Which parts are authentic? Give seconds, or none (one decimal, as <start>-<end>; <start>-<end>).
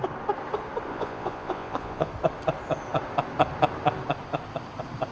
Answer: 0.0-0.9; 2.1-5.1